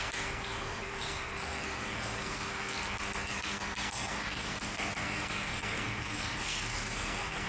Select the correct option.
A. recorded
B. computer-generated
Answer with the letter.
B